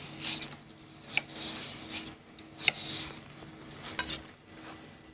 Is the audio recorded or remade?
recorded